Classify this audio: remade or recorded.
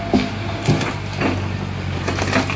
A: recorded